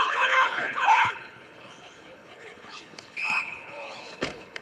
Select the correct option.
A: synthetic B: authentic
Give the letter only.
A